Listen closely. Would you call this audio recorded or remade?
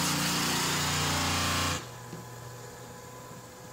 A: recorded